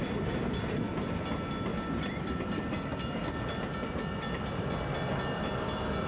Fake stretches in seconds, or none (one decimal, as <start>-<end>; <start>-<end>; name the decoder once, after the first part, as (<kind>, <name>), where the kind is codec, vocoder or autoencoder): none